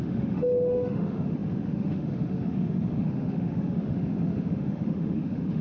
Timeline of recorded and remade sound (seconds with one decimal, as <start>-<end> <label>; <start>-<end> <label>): 0.0-5.6 remade